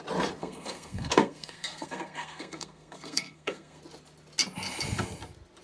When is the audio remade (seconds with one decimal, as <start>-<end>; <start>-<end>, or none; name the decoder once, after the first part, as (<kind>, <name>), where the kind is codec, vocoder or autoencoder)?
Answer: 0.4-3.8 (codec, SNAC)